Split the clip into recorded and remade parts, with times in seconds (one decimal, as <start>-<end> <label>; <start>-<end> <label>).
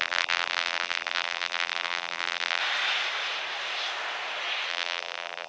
0.0-2.6 remade; 2.6-4.7 recorded; 4.7-5.5 remade